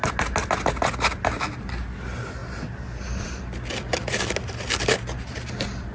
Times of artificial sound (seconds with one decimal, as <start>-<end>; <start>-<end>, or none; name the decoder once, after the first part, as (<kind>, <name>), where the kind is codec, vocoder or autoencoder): none